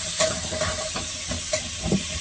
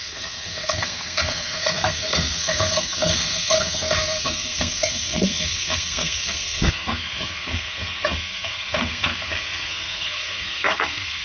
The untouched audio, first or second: first